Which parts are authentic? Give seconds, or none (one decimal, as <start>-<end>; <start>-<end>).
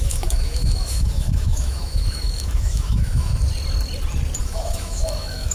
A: 3.3-4.4